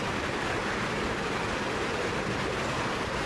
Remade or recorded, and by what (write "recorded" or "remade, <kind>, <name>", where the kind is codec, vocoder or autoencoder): recorded